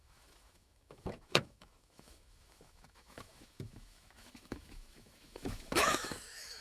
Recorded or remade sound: remade